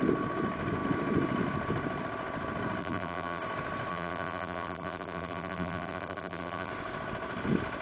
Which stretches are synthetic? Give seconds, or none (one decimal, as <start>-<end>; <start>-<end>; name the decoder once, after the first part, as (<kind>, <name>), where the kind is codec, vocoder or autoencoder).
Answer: 2.8-3.4 (vocoder, BigVGAN v2); 3.9-6.7